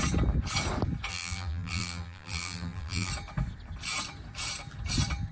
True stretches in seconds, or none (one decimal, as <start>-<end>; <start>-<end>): 0.0-1.1; 3.1-5.3